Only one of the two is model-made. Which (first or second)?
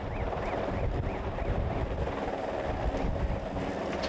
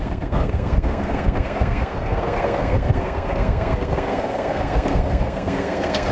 second